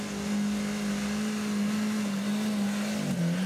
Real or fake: real